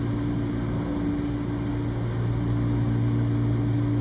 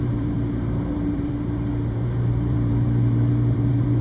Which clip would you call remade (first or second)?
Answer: second